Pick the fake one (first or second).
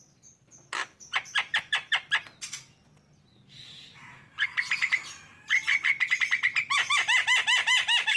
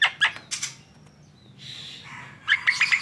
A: first